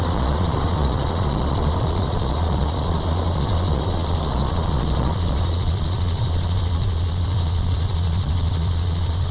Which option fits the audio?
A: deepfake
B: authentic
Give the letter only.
A